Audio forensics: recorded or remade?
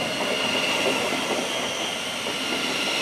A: recorded